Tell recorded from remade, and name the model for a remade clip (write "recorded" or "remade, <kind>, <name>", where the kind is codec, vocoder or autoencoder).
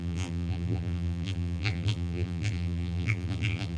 remade, vocoder, BigVGAN v2